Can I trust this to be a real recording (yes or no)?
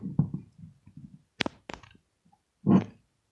yes